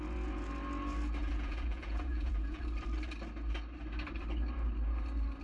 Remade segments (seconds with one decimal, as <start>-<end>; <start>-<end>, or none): 1.2-2.6